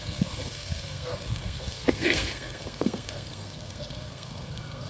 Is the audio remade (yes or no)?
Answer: yes